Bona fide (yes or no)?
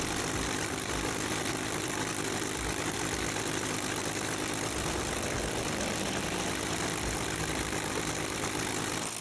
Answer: yes